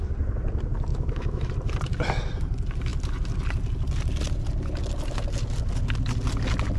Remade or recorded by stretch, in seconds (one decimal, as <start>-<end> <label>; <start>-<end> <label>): 0.0-0.9 recorded; 0.9-1.5 remade; 1.5-6.8 recorded